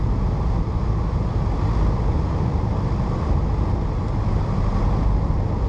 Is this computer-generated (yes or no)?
no